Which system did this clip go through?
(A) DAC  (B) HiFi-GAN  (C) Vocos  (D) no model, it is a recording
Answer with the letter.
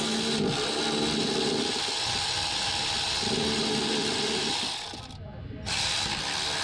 D